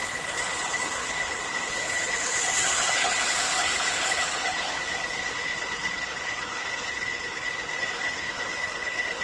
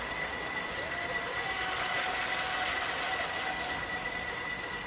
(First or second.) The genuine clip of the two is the second